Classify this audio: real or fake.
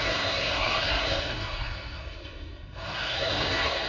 fake